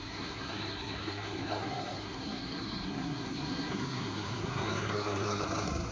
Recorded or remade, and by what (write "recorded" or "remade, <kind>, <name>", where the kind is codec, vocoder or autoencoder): remade, codec, SNAC